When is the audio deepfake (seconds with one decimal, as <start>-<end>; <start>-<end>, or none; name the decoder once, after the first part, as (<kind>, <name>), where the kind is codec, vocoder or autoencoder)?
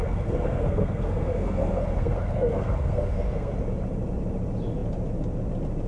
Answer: 0.0-3.5 (codec, SNAC)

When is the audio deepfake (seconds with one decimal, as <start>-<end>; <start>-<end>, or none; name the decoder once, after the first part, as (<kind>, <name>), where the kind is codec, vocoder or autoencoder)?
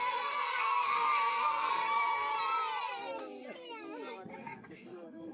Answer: 0.0-2.3 (codec, SNAC); 4.3-5.3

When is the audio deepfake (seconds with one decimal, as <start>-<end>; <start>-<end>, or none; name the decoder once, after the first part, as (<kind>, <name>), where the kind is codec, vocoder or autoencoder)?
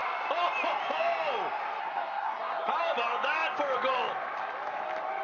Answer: 1.8-2.7 (codec, SNAC)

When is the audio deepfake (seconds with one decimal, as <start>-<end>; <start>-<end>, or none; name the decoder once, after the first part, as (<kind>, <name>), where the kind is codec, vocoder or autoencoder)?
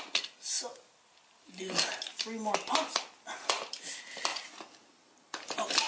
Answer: none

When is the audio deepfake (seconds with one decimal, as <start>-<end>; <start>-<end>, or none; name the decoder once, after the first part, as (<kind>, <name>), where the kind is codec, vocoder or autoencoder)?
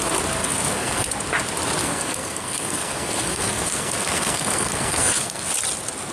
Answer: 0.4-1.1 (codec, SNAC); 1.8-5.5